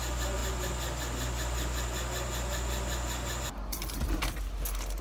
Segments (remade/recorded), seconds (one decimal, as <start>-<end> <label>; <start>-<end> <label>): 0.0-5.0 recorded